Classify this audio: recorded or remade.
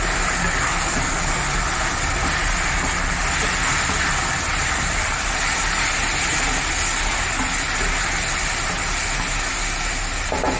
recorded